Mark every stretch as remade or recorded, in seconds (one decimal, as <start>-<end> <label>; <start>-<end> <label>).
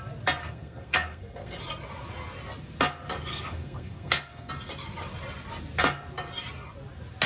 0.0-0.4 recorded; 0.4-1.6 remade; 1.6-3.3 recorded; 3.3-4.5 remade; 4.5-7.3 recorded